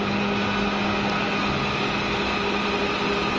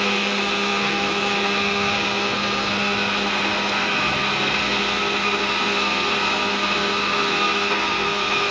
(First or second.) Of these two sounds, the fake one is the second